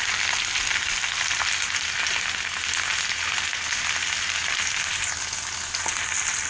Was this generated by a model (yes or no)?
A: no